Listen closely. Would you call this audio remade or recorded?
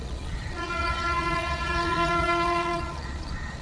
remade